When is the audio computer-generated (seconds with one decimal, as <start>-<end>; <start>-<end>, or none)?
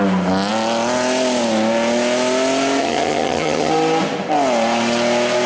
2.8-3.7